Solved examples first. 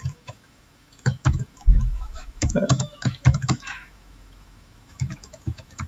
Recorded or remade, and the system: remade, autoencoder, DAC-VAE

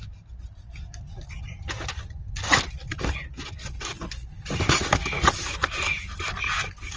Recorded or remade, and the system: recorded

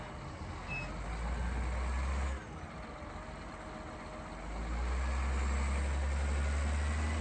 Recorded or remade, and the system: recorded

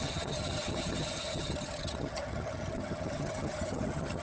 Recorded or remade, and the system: remade, vocoder, HiFi-GAN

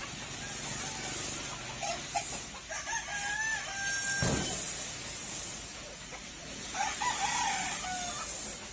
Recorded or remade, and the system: recorded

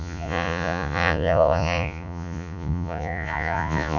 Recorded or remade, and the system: remade, vocoder, Vocos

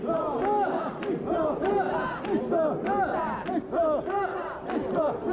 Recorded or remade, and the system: recorded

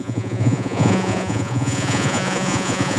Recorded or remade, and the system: remade, vocoder, Vocos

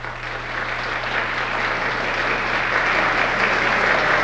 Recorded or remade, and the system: recorded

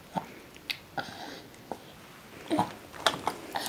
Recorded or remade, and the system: recorded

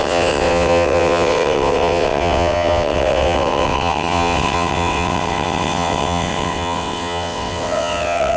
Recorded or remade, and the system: remade, vocoder, WaveNeXt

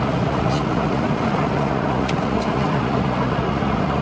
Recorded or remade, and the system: remade, vocoder, Vocos